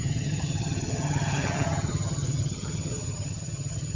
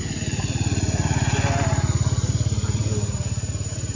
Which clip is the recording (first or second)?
second